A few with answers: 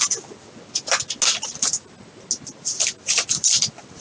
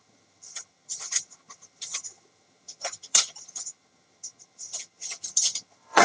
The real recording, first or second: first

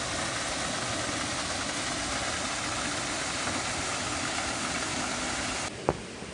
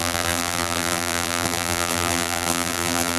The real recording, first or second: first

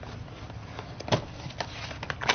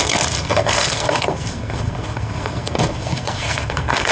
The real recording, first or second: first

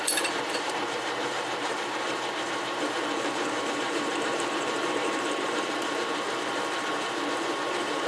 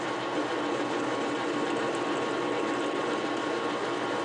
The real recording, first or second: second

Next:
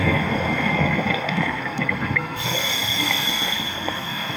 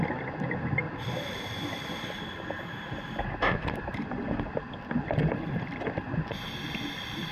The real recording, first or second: second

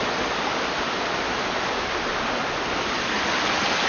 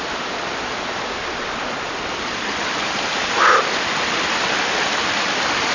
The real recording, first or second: first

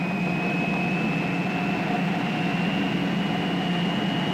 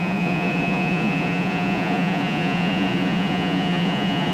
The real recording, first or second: first